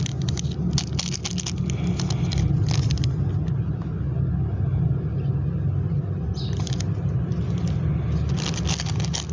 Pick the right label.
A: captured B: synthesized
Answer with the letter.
A